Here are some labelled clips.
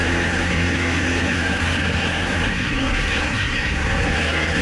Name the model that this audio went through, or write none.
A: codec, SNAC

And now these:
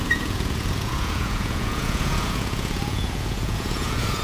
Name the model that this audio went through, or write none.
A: vocoder, Vocos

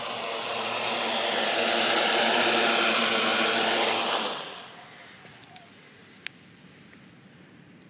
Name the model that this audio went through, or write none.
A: none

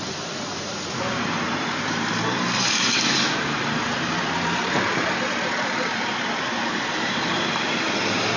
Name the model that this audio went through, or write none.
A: vocoder, BigVGAN v2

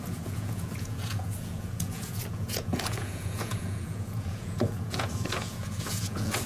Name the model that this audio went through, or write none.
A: vocoder, Vocos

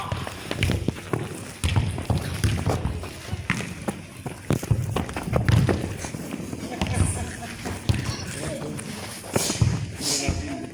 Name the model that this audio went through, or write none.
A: none